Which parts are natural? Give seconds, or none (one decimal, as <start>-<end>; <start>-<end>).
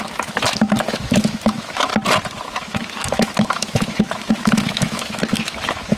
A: 1.9-2.5